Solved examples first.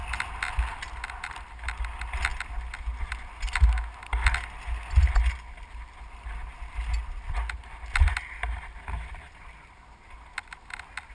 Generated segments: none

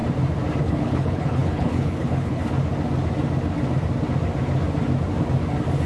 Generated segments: 0.6-2.4 (codec, HILCodec)

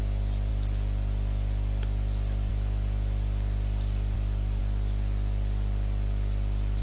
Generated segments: none

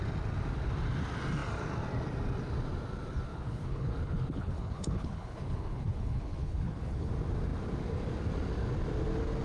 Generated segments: 3.3-7.1 (codec, HILCodec)

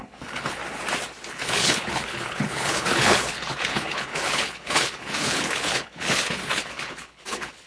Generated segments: 0.0-0.6 (codec, HILCodec); 1.3-7.7